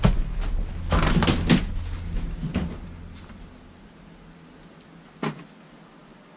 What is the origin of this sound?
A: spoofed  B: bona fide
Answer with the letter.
B